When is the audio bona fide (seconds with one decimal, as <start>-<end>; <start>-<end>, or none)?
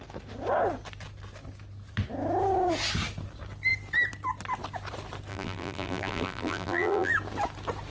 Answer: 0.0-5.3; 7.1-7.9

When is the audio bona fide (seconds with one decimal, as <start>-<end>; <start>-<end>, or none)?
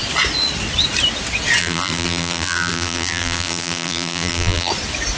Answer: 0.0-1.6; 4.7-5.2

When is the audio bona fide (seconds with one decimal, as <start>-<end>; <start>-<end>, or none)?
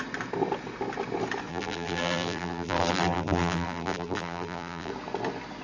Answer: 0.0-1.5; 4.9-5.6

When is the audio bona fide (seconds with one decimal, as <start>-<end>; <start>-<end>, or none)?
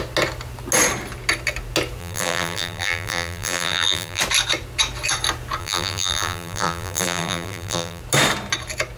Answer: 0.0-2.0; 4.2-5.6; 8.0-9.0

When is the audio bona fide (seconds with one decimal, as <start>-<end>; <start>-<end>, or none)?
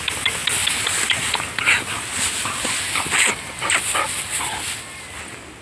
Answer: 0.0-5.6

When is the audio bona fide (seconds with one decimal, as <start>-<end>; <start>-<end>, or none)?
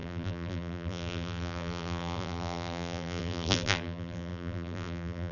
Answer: none